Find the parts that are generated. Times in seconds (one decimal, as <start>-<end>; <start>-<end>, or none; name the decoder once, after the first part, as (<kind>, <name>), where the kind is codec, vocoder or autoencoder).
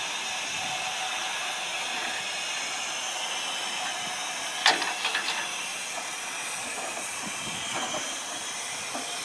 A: 1.3-2.1 (vocoder, Vocos); 5.7-8.2